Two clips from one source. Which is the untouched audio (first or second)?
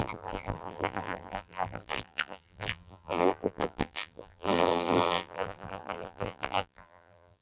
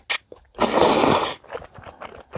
second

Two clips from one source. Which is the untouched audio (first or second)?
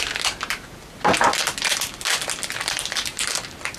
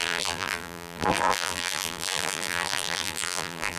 first